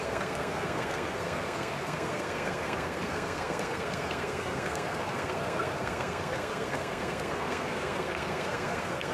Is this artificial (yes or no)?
yes